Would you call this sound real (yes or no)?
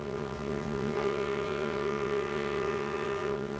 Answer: no